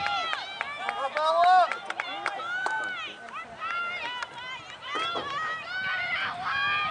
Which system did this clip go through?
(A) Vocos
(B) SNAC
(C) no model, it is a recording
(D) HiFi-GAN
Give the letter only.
C